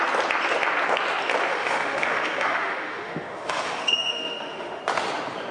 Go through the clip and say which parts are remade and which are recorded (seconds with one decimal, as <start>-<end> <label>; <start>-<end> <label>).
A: 0.0-1.5 recorded; 1.5-4.8 remade; 4.8-5.5 recorded

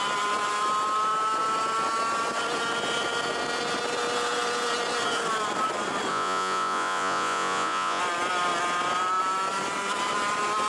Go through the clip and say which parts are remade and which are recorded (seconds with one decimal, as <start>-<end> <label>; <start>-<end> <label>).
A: 0.0-6.1 recorded; 6.1-8.0 remade; 8.0-10.7 recorded

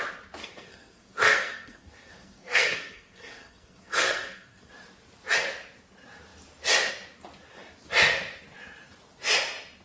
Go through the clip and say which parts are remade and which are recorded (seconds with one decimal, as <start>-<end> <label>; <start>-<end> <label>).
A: 0.0-0.4 recorded; 0.4-4.7 remade; 4.7-9.8 recorded

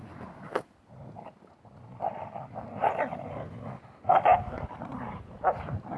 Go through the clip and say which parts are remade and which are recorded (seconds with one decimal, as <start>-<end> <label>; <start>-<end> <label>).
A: 0.0-6.0 recorded

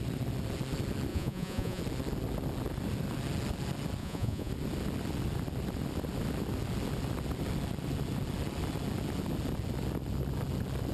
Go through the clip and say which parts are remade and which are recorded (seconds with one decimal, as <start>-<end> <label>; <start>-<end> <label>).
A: 0.0-1.1 recorded; 1.1-1.8 remade; 1.8-4.0 recorded; 4.0-4.5 remade; 4.5-10.9 recorded